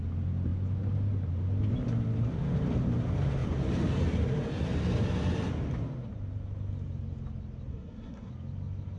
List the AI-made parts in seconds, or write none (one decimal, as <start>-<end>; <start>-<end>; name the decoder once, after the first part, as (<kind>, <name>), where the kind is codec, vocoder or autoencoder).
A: 7.7-8.3 (codec, SNAC)